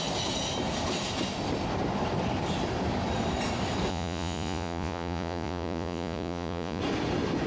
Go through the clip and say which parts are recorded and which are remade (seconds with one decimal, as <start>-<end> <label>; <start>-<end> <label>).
0.0-3.9 recorded; 3.9-6.8 remade; 6.8-7.5 recorded